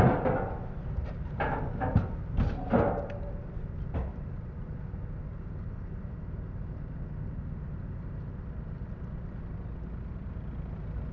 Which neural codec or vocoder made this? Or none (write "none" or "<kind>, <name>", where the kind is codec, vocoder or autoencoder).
none